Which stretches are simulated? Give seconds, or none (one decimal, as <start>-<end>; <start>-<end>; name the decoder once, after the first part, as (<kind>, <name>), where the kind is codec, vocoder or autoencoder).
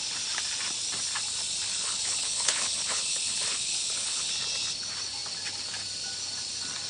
1.7-4.3 (codec, HILCodec)